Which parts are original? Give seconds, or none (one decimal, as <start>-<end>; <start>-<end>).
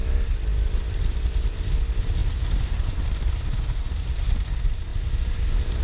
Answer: 2.2-2.7; 4.9-5.8